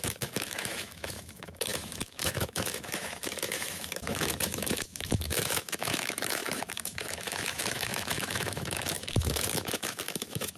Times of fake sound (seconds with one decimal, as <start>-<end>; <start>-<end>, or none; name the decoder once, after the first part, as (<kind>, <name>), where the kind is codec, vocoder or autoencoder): 0.0-10.6 (autoencoder, DAC-VAE)